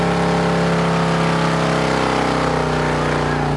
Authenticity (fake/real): real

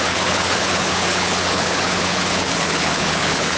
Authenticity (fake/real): fake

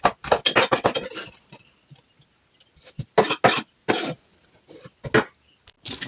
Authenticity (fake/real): real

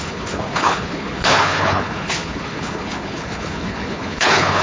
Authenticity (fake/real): fake